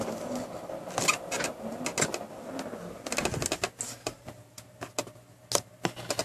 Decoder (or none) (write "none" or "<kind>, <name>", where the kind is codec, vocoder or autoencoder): none